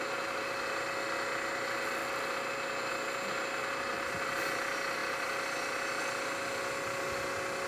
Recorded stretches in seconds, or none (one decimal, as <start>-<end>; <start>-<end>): 0.0-7.7